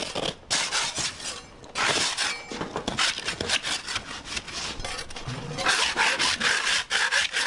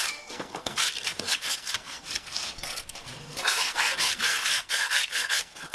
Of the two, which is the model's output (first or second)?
second